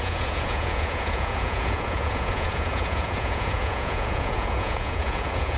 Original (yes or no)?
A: no